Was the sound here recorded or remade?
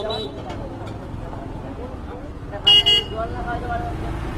recorded